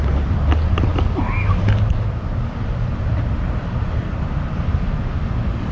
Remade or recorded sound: recorded